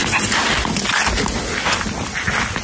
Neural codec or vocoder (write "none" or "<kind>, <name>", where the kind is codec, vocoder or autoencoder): none